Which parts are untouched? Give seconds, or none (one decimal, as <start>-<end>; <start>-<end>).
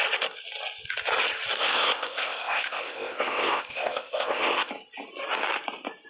0.0-1.6; 4.7-6.1